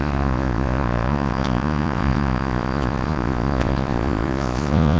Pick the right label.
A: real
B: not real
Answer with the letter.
B